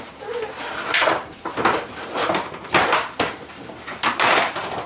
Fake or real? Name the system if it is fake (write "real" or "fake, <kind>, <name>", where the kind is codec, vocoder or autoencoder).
fake, vocoder, BigVGAN v2